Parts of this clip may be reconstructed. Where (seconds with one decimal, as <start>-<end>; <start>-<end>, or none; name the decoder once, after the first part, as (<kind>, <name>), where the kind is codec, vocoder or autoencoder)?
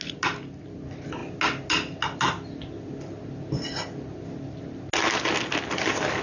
none